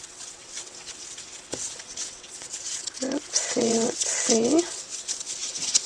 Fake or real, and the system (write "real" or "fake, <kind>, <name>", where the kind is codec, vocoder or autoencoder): fake, vocoder, WaveNeXt